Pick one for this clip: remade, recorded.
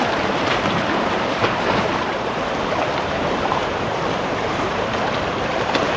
remade